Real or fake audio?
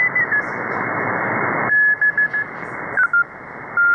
real